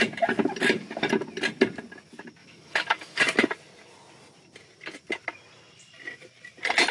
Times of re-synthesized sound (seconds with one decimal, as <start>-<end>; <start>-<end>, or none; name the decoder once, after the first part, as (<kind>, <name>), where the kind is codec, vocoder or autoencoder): 2.4-3.2 (autoencoder, DAC-VAE)

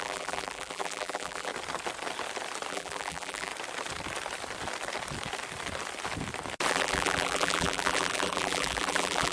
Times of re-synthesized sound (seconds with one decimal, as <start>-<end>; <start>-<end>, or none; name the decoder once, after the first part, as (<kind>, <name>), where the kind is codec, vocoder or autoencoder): 0.0-1.5 (vocoder, BigVGAN v2); 2.7-3.5; 6.7-9.3